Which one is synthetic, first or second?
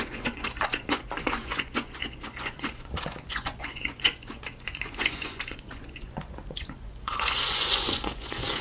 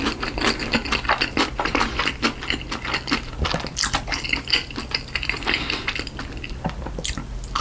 first